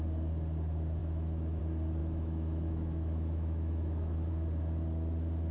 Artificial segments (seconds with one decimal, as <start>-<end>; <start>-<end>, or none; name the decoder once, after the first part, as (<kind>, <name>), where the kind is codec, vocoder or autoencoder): 1.0-1.6 (autoencoder, DAC-VAE); 2.0-4.3